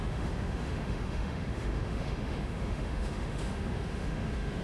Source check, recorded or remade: remade